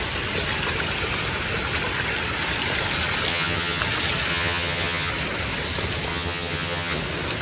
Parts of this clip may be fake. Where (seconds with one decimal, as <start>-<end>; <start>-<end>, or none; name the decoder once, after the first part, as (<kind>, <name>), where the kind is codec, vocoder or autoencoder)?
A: 3.3-3.8 (vocoder, HiFi-GAN); 4.3-5.1; 6.1-7.0